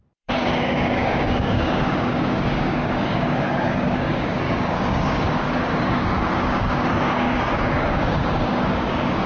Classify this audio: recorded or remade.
remade